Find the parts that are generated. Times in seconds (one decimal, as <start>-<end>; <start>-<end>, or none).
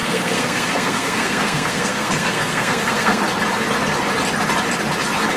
0.0-3.2